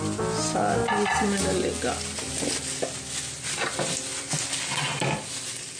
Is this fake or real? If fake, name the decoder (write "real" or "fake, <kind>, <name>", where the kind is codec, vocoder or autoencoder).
real